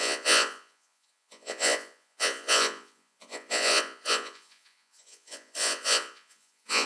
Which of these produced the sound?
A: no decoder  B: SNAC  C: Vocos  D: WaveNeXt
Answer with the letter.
C